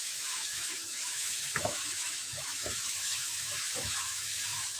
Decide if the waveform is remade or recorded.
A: remade